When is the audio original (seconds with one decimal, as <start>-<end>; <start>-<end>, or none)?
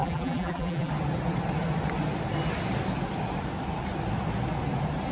0.9-5.1